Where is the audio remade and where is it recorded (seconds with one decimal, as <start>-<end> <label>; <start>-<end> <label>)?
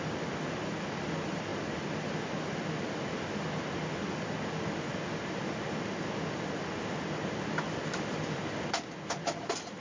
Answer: 0.0-9.8 recorded